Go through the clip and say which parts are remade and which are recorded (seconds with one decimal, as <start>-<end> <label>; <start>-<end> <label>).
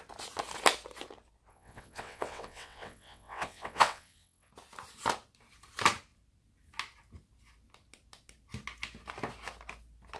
0.0-1.5 recorded; 1.5-4.5 remade; 4.5-10.2 recorded